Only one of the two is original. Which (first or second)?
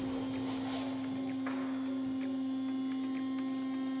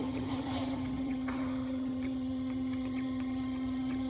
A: first